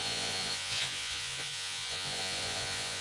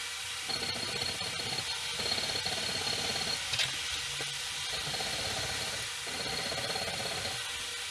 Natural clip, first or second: second